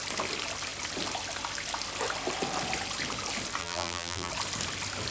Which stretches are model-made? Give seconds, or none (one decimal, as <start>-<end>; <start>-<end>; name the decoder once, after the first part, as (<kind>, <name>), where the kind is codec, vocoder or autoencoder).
3.6-4.3 (vocoder, BigVGAN v2)